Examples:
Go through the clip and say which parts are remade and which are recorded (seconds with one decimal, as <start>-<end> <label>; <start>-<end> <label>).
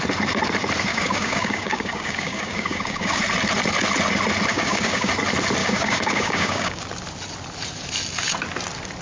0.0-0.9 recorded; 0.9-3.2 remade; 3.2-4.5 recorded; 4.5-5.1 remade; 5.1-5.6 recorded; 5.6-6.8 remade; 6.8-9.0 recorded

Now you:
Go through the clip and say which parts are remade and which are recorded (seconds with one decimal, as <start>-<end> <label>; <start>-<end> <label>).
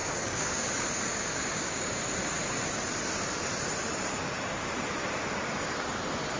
0.0-0.7 remade; 0.7-1.1 recorded; 1.1-2.0 remade; 2.0-6.4 recorded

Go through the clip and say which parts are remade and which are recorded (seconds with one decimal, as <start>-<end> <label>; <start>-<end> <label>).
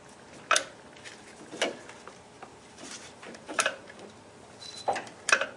0.0-2.5 recorded; 2.5-4.4 remade; 4.4-5.6 recorded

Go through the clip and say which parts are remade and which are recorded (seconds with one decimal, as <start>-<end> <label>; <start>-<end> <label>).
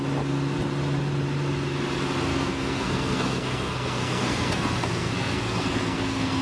0.0-2.3 recorded; 2.3-6.4 remade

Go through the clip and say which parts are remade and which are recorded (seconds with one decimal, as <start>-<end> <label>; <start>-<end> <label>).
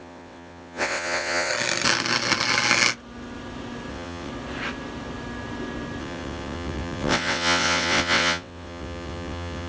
0.0-1.5 remade; 1.5-3.9 recorded; 3.9-4.3 remade; 4.3-6.0 recorded; 6.0-9.7 remade